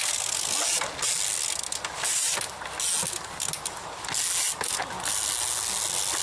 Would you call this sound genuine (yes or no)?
yes